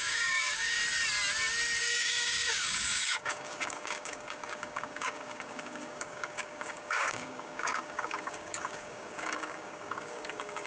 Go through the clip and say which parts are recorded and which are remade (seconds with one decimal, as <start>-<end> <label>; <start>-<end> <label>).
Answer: 0.0-0.8 remade; 0.8-1.8 recorded; 1.8-10.7 remade